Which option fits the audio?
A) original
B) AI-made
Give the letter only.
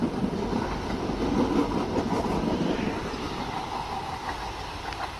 A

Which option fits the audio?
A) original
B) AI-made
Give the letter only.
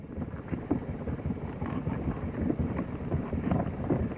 A